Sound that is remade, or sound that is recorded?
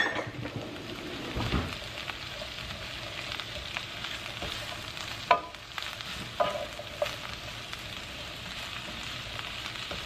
recorded